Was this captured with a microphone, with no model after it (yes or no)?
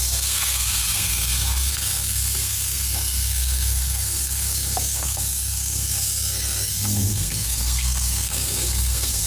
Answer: no